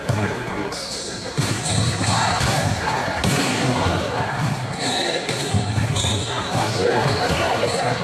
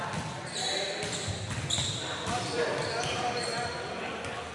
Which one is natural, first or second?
second